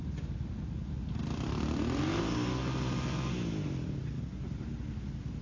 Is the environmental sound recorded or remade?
recorded